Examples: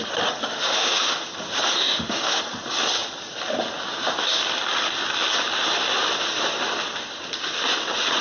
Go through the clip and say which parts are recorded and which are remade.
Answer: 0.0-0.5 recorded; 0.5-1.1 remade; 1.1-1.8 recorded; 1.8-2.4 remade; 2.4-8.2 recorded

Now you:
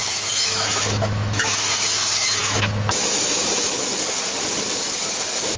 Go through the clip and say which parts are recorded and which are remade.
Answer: 0.0-3.9 remade; 3.9-5.6 recorded

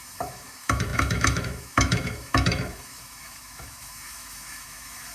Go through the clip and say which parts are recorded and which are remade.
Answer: 0.0-5.1 remade

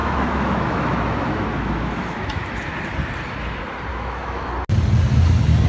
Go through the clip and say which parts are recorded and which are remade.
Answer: 0.0-2.7 remade; 2.7-3.9 recorded; 3.9-4.5 remade; 4.5-5.7 recorded

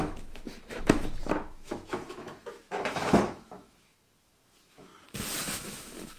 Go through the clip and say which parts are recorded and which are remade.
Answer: 0.0-4.9 remade; 4.9-5.4 recorded; 5.4-6.2 remade